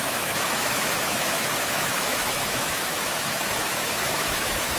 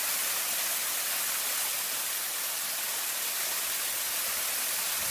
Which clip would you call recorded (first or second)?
second